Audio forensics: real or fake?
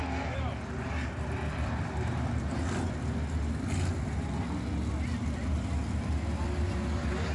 real